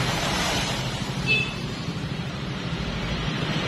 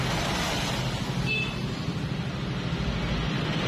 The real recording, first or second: second